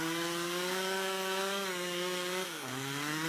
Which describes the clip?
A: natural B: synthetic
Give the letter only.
B